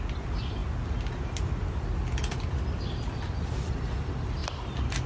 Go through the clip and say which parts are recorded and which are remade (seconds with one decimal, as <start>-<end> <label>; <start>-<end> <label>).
0.0-5.1 recorded